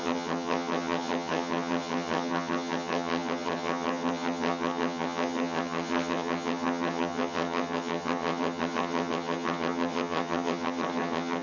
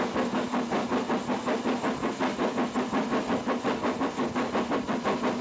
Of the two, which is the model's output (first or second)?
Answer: first